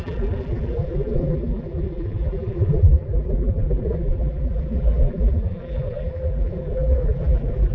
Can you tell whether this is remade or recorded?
remade